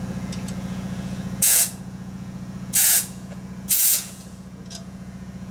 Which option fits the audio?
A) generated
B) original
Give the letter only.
A